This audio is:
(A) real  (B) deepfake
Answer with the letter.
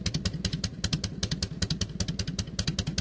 A